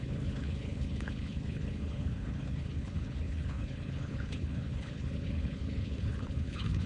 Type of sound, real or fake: fake